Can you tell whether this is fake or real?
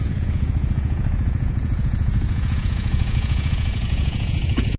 fake